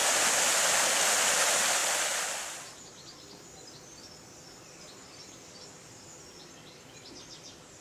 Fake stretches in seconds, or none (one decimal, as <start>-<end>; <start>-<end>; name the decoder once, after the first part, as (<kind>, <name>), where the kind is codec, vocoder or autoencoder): 1.3-7.8 (vocoder, BigVGAN v2)

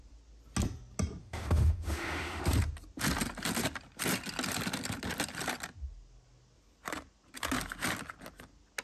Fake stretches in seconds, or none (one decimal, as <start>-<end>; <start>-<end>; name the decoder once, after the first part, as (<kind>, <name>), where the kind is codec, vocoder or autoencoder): 1.2-2.4 (autoencoder, DAC-VAE)